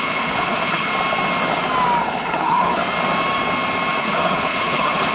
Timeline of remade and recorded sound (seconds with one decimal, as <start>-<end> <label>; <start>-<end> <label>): 0.0-0.9 remade; 0.9-2.0 recorded; 2.0-2.8 remade; 2.8-4.0 recorded; 4.0-5.1 remade